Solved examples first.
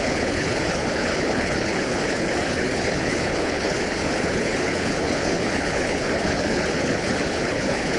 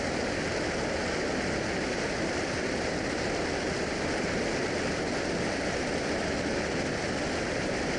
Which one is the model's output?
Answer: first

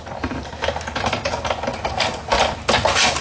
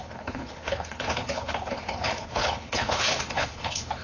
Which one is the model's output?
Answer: second